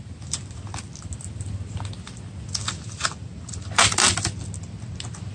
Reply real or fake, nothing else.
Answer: real